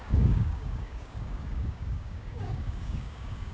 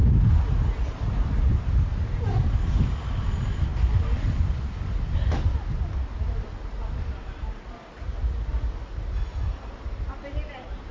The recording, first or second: second